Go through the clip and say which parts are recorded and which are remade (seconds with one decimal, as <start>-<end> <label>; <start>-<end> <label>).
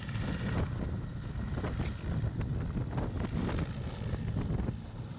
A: 0.0-5.2 recorded